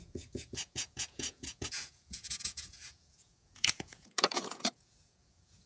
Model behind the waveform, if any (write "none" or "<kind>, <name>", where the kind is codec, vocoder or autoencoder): vocoder, Vocos